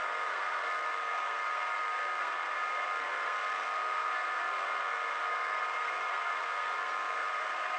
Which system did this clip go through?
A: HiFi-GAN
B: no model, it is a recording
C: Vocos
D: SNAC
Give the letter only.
D